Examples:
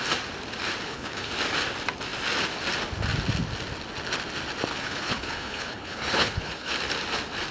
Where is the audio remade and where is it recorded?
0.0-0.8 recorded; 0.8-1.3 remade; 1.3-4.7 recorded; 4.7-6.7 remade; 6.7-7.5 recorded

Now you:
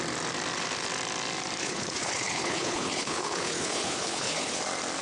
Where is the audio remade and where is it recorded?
0.0-1.6 recorded; 1.6-4.6 remade; 4.6-5.0 recorded

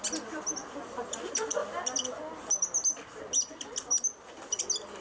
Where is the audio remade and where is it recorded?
0.0-5.0 recorded